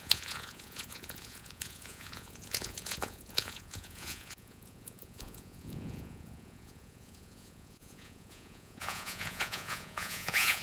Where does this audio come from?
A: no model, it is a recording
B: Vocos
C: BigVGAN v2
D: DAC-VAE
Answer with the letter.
B